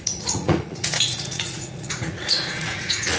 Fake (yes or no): yes